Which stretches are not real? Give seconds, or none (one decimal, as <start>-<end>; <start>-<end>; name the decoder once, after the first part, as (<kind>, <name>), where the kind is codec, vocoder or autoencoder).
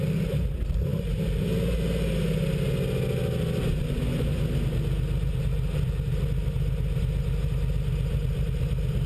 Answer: none